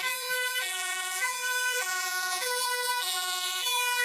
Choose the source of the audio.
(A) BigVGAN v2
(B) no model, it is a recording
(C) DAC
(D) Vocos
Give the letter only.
A